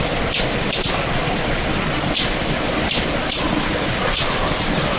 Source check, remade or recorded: recorded